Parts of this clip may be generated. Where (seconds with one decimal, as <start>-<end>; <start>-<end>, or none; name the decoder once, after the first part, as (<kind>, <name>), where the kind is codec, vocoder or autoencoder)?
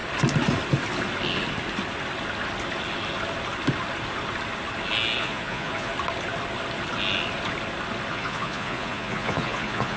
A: 5.2-5.9 (vocoder, Vocos); 8.1-10.0